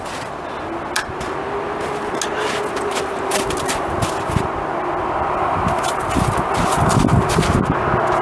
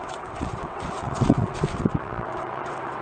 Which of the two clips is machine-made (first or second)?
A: second